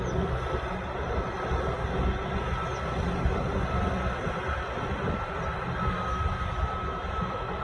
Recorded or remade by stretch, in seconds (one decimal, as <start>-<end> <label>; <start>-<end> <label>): 0.0-6.1 recorded; 6.1-7.6 remade